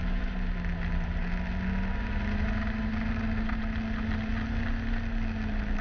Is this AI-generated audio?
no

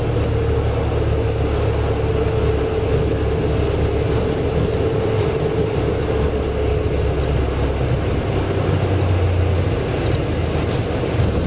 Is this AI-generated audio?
no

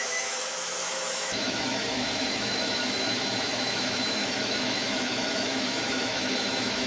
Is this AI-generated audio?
yes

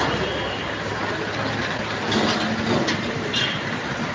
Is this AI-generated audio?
no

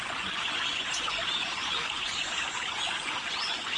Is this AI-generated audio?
yes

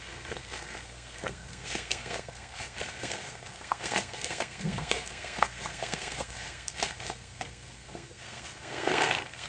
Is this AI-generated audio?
yes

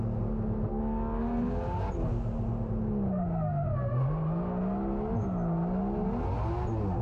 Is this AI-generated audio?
no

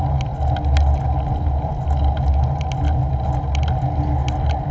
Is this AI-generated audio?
no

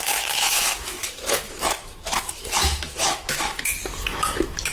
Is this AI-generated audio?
yes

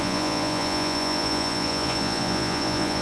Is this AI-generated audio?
yes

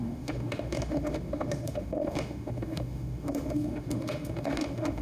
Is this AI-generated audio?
yes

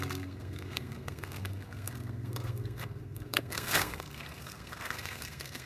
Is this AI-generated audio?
yes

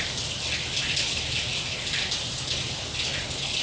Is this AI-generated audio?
no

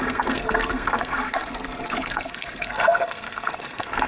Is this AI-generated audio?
yes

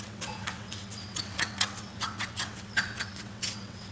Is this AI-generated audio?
yes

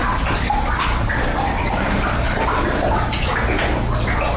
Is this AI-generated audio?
no